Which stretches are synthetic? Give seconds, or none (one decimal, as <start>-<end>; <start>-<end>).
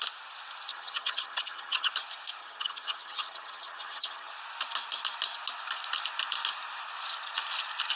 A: 0.7-1.9; 2.4-4.3